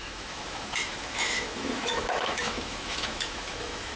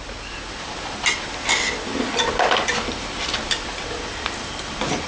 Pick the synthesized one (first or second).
first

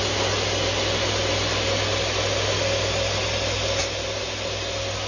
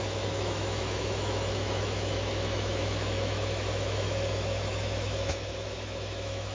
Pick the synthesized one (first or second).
second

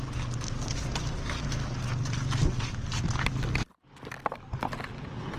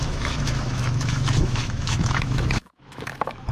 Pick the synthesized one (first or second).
second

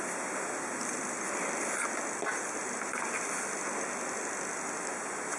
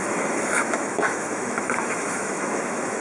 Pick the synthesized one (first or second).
second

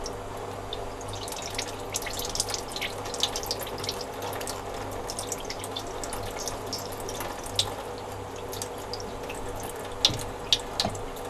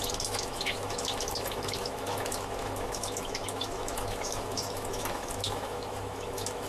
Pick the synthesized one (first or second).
second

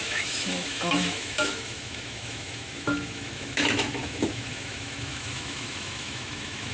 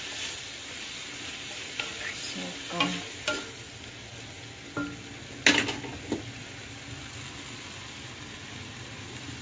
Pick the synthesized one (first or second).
first